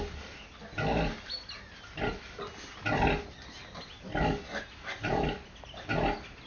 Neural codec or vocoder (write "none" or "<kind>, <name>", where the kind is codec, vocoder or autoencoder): none